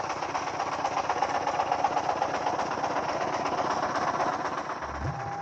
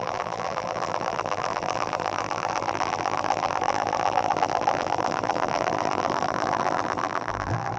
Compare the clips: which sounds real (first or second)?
first